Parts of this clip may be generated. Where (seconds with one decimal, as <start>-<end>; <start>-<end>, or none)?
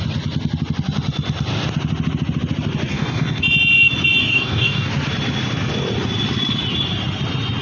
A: 2.9-3.4; 4.2-4.9